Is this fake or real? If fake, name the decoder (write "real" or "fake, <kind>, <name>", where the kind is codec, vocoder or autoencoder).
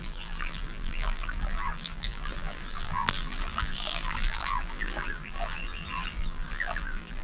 fake, vocoder, BigVGAN v2